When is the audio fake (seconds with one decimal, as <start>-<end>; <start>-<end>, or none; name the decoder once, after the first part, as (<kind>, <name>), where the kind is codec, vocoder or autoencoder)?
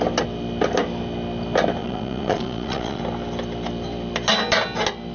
1.8-3.0 (vocoder, Vocos)